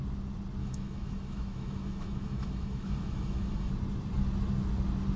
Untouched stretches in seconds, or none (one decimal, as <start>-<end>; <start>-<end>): 0.0-0.6; 3.7-5.2